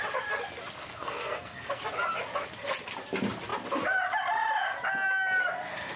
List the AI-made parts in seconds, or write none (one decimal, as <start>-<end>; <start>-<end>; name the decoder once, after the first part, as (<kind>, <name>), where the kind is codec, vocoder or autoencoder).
0.8-1.8 (codec, SNAC)